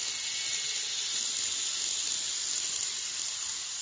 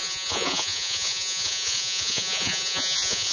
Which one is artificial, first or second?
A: second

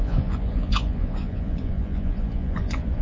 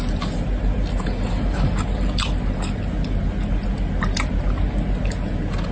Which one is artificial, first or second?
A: first